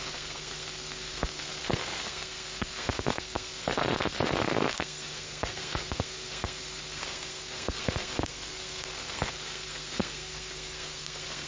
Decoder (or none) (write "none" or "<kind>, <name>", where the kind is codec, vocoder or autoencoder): codec, SNAC